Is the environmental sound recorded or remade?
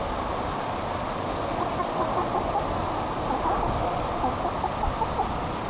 recorded